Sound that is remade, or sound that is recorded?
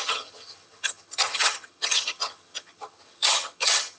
remade